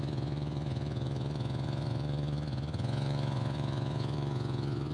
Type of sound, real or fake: fake